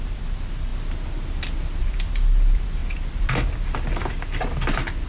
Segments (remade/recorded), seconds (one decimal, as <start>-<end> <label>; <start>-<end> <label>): 0.0-0.7 remade; 0.7-1.8 recorded; 1.8-2.8 remade; 2.8-3.9 recorded; 3.9-5.1 remade